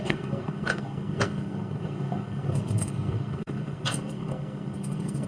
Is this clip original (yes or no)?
no